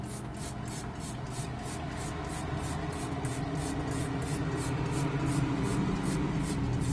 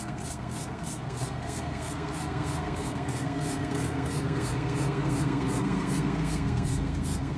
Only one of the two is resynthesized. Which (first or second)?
second